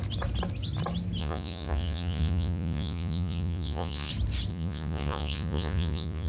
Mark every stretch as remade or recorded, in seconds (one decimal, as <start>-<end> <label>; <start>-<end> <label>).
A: 0.0-1.2 recorded; 1.2-4.1 remade; 4.1-4.5 recorded; 4.5-6.3 remade